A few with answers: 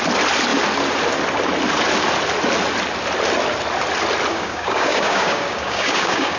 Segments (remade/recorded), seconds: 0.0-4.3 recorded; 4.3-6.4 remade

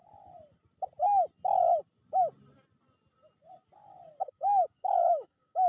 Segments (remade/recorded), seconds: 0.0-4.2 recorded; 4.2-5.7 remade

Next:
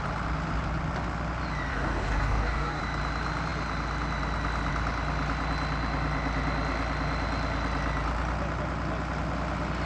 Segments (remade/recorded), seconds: 0.0-1.7 recorded; 1.7-2.8 remade; 2.8-9.9 recorded

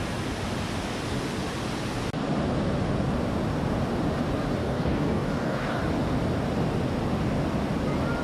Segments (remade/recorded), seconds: 0.0-4.6 recorded; 4.6-5.8 remade; 5.8-8.2 recorded

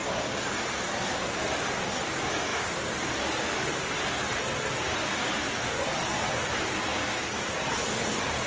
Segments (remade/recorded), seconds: 0.0-8.5 recorded

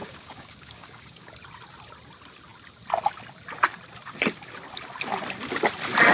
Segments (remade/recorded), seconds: 0.0-1.3 remade; 1.3-6.1 recorded